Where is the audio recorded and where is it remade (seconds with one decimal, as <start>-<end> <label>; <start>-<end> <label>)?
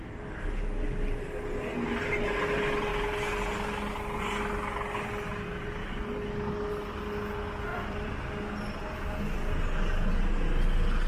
0.0-7.7 recorded; 7.7-8.2 remade; 8.2-11.1 recorded